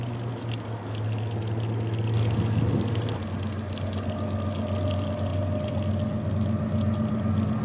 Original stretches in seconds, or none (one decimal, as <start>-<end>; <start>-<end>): 0.0-7.6